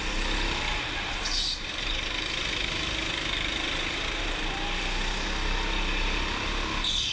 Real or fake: real